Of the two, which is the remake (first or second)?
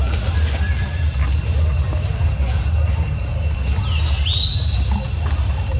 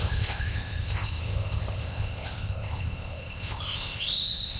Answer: second